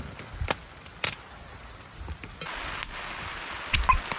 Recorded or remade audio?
recorded